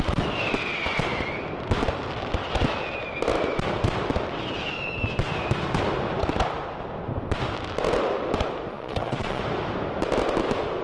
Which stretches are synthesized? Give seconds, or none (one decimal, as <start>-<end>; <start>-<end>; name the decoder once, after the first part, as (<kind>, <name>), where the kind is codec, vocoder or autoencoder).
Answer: 8.7-9.4 (vocoder, Vocos)